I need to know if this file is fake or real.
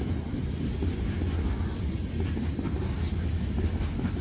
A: real